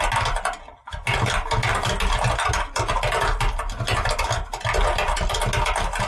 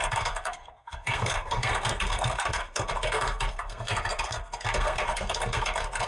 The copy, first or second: second